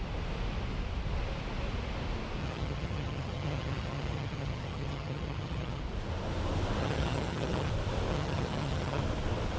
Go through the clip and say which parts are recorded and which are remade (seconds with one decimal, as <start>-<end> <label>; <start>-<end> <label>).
0.0-2.4 recorded; 2.4-5.8 remade; 5.8-6.8 recorded; 6.8-7.7 remade; 7.7-8.1 recorded; 8.1-9.0 remade; 9.0-9.6 recorded